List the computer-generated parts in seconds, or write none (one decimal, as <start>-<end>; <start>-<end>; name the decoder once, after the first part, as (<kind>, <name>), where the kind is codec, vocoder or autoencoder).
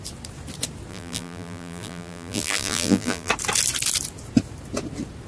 0.9-3.3 (vocoder, BigVGAN v2)